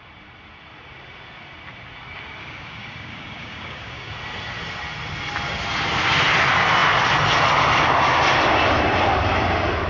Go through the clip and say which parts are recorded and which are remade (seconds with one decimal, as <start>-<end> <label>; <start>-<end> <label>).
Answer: 0.0-2.4 recorded; 2.4-4.1 remade; 4.1-9.9 recorded